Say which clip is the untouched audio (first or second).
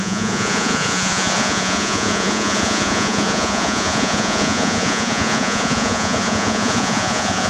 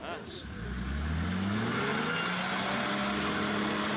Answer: second